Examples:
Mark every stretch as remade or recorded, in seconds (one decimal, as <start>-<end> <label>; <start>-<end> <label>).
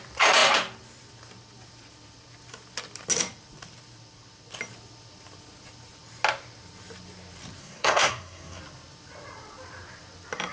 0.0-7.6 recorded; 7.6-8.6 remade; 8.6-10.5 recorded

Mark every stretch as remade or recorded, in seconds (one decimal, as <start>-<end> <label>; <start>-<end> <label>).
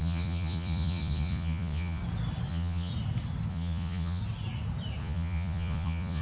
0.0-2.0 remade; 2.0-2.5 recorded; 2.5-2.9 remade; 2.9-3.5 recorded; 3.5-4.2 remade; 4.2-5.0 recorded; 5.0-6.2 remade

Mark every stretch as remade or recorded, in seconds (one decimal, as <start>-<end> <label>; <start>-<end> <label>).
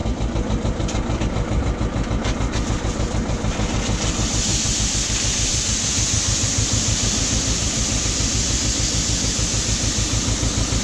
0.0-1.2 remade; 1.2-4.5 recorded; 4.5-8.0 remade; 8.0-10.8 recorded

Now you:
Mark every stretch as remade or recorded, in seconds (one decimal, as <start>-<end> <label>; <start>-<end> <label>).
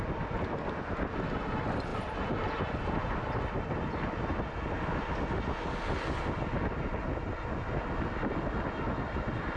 0.0-9.6 recorded